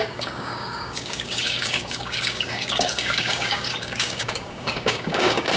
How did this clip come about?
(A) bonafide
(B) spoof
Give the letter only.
B